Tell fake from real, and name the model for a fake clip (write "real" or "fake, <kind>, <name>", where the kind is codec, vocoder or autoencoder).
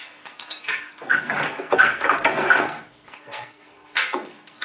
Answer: fake, codec, SNAC